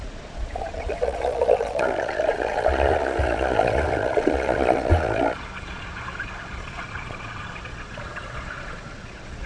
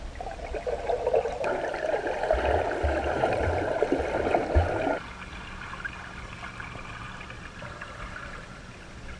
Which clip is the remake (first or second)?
first